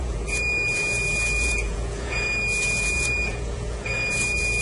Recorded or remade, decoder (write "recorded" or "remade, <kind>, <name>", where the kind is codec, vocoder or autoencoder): remade, vocoder, Vocos